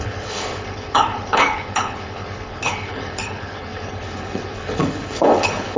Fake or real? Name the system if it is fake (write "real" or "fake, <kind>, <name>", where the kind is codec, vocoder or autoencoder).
fake, codec, HILCodec